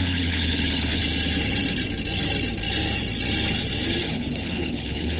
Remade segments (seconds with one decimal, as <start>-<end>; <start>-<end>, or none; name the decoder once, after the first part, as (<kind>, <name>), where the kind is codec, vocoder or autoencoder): 0.0-1.0 (codec, HILCodec); 4.0-5.2